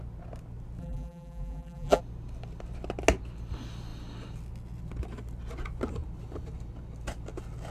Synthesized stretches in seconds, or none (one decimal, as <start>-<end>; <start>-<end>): 0.8-2.0